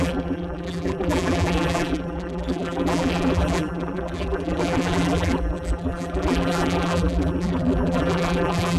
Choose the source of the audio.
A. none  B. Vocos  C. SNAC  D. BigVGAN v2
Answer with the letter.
D